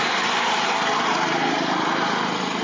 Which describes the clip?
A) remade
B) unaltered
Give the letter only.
B